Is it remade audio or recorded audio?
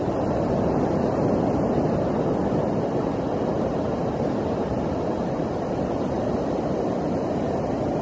recorded